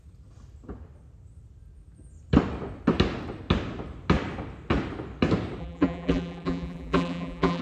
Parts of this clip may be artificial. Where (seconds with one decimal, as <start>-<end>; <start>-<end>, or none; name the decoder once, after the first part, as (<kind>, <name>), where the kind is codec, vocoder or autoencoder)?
5.6-7.6 (vocoder, BigVGAN v2)